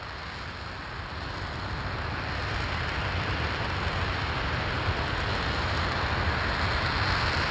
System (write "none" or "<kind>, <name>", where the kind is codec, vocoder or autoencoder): none